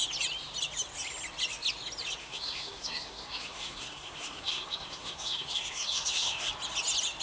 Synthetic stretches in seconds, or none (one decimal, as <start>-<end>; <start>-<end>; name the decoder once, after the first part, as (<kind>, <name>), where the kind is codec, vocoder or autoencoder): 2.2-6.5 (codec, SNAC)